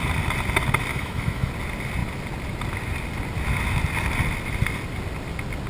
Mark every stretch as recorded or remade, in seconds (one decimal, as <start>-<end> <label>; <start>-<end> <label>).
0.0-0.9 recorded; 0.9-1.5 remade; 1.5-5.7 recorded